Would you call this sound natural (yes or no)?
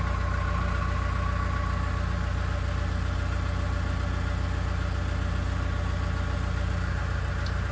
yes